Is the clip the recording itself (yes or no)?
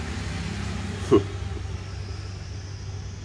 yes